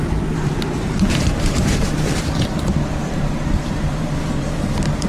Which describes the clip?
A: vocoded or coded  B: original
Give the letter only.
A